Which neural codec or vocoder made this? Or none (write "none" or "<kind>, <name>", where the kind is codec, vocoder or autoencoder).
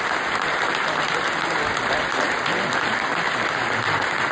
none